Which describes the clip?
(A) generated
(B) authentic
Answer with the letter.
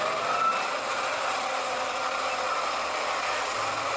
B